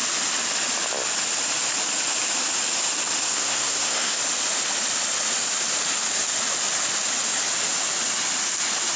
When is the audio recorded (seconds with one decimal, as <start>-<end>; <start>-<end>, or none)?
0.0-3.3; 4.2-9.0